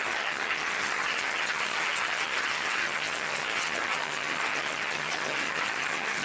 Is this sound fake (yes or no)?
yes